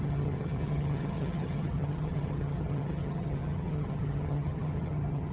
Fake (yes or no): yes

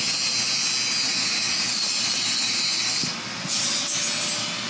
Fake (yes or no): no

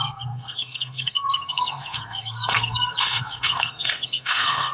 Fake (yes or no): yes